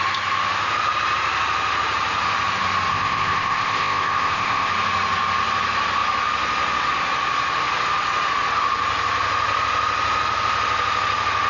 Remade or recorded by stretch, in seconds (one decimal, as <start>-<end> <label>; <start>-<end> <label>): 0.0-2.9 recorded; 2.9-4.7 remade; 4.7-11.5 recorded